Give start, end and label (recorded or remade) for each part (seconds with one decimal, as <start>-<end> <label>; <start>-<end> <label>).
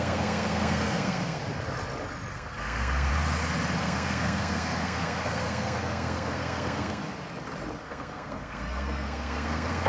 0.0-1.4 remade; 1.4-2.3 recorded; 2.3-3.1 remade; 3.1-3.8 recorded; 3.8-7.0 remade; 7.0-7.8 recorded; 7.8-9.9 remade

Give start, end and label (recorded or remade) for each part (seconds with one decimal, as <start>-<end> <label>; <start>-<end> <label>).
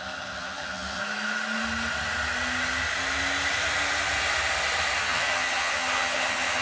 0.0-1.0 remade; 1.0-5.0 recorded; 5.0-6.6 remade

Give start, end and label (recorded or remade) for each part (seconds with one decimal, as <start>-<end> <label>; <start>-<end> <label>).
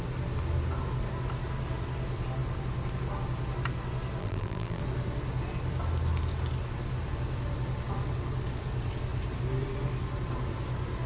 0.0-4.2 recorded; 4.2-4.8 remade; 4.8-11.1 recorded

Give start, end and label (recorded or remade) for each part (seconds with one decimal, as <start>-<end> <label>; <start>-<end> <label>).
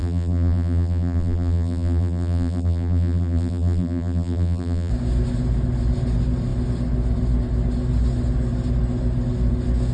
0.0-4.9 remade; 4.9-9.9 recorded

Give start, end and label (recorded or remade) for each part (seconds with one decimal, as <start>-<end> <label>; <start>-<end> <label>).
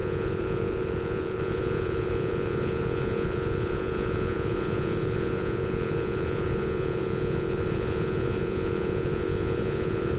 0.0-10.2 remade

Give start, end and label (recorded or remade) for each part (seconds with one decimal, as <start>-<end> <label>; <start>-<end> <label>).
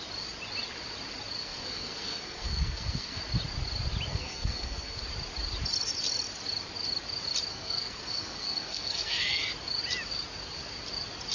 0.0-1.4 recorded; 1.4-3.2 remade; 3.2-4.1 recorded; 4.1-5.0 remade; 5.0-7.5 recorded; 7.5-9.4 remade; 9.4-11.3 recorded